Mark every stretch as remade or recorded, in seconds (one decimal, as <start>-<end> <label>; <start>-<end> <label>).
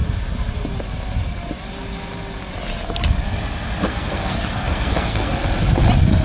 0.0-3.9 recorded; 3.9-5.5 remade; 5.5-6.2 recorded